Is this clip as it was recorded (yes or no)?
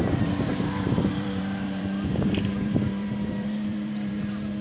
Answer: no